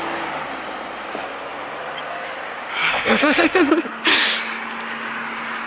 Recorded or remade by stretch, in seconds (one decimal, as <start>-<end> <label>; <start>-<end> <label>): 0.0-2.9 recorded; 2.9-3.7 remade; 3.7-5.7 recorded